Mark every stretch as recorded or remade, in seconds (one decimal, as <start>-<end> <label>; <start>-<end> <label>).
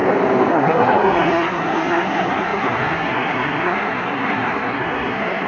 0.0-0.5 recorded; 0.5-5.5 remade